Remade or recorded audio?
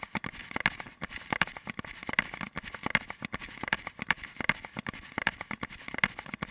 recorded